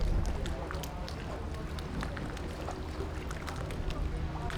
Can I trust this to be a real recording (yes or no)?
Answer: yes